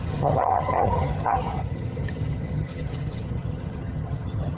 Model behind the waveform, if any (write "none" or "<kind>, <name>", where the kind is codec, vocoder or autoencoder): vocoder, HiFi-GAN